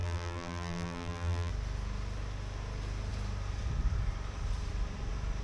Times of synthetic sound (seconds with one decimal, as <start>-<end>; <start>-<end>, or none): 0.0-1.5